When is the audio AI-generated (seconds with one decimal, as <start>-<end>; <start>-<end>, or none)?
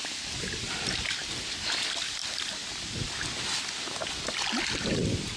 none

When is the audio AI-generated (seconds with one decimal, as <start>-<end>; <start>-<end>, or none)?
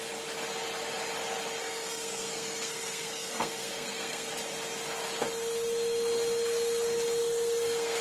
1.6-4.3; 7.2-8.0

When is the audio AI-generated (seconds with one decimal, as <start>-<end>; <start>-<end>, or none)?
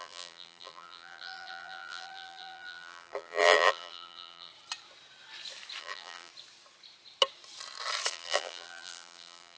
0.0-4.5; 5.8-6.3; 8.1-9.6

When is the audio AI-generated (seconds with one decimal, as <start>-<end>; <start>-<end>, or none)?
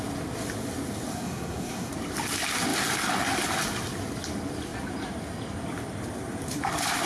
1.1-1.9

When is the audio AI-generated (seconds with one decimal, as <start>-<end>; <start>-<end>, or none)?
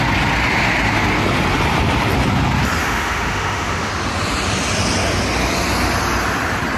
2.8-3.9